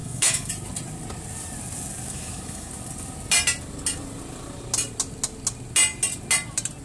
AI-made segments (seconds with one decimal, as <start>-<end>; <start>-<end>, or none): 0.0-0.5; 2.1-2.7